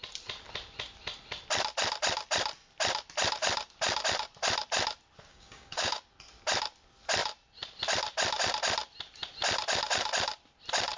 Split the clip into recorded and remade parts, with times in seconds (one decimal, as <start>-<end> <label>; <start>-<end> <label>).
0.0-5.3 recorded; 5.3-6.0 remade; 6.0-11.0 recorded